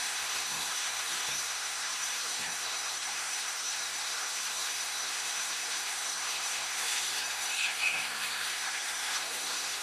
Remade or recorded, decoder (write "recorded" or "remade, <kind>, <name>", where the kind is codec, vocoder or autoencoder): remade, codec, SNAC